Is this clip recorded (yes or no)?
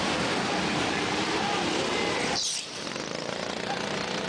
no